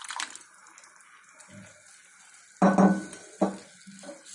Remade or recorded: recorded